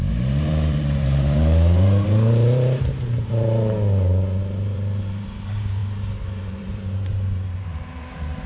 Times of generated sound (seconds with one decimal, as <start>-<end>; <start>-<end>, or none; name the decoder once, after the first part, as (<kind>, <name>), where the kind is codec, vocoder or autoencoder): 0.0-8.5 (vocoder, BigVGAN v2)